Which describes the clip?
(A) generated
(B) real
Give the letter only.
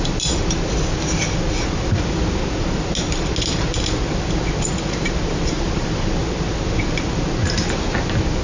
B